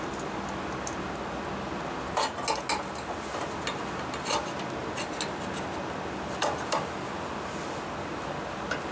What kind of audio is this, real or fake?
real